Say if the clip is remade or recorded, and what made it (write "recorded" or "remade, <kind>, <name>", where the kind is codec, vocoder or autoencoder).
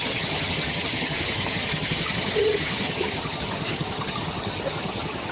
remade, vocoder, HiFi-GAN